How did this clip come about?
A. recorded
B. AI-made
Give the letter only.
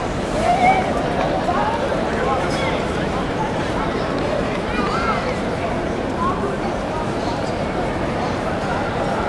B